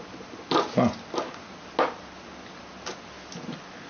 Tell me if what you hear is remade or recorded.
recorded